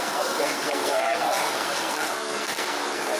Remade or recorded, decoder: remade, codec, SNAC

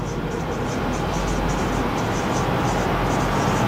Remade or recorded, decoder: recorded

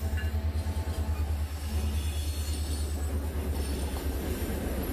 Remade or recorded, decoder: recorded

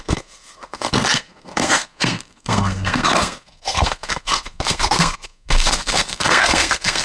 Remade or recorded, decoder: remade, codec, SNAC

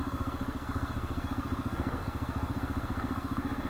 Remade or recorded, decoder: remade, codec, SNAC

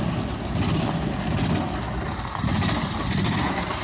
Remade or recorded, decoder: recorded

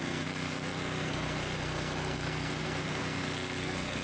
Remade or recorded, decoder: remade, codec, SNAC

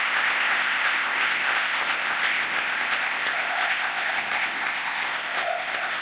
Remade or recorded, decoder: remade, codec, ZipCodec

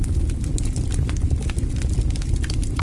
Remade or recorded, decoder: recorded